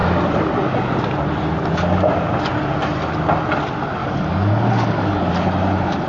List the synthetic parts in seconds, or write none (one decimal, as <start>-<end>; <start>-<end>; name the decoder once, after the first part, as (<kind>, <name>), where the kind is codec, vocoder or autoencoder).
4.0-5.3 (codec, DAC)